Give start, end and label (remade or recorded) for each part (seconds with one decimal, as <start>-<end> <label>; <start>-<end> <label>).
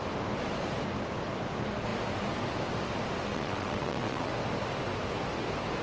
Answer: 0.0-3.3 recorded; 3.3-4.3 remade; 4.3-5.8 recorded